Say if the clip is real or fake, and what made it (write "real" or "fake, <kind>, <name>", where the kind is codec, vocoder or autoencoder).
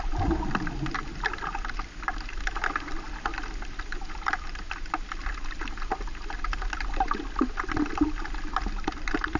real